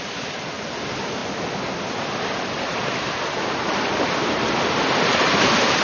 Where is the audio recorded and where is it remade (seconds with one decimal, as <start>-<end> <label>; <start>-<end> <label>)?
0.0-5.8 recorded